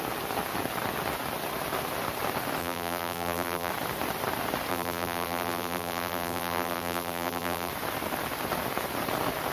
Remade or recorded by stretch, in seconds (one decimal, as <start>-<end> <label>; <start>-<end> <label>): 0.0-2.6 recorded; 2.6-3.7 remade; 3.7-4.7 recorded; 4.7-7.7 remade; 7.7-9.5 recorded